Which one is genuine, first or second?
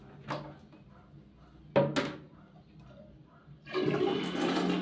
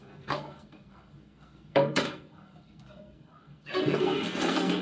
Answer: first